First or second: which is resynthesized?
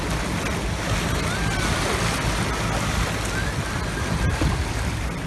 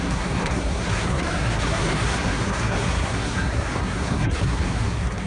second